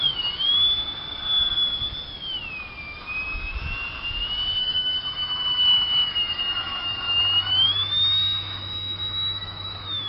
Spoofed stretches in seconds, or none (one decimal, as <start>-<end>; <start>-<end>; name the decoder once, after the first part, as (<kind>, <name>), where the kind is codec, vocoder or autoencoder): 4.6-10.1 (autoencoder, DAC-VAE)